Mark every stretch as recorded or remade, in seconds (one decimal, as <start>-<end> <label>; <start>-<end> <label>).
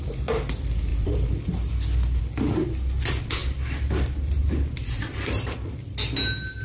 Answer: 0.0-0.9 recorded; 0.9-2.2 remade; 2.2-4.8 recorded; 4.8-5.7 remade; 5.7-6.6 recorded